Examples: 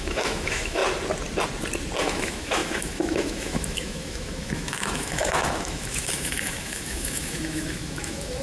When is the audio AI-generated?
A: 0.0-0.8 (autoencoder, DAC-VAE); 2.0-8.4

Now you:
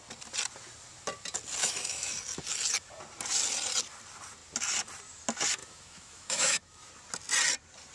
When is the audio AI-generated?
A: 1.6-2.1 (autoencoder, DAC-VAE); 5.6-6.9

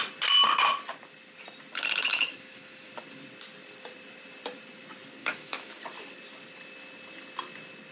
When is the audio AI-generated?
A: 2.1-2.9 (autoencoder, DAC-VAE); 5.2-5.8